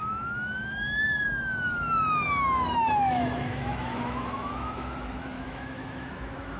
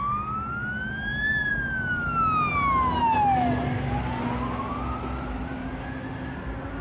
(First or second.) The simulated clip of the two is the first